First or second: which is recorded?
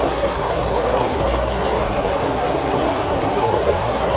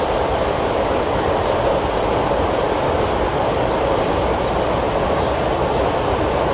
second